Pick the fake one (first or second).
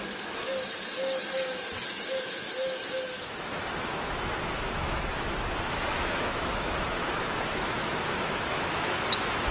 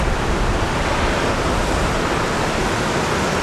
first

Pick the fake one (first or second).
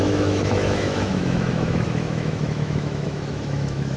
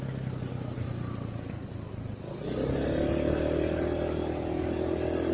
first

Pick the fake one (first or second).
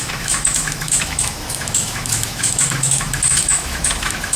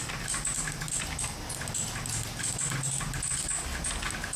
first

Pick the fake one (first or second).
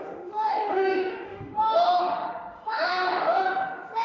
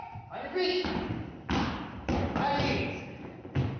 first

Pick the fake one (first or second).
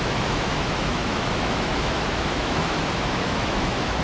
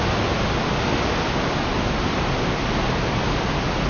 first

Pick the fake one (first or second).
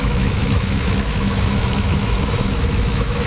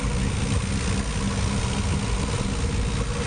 first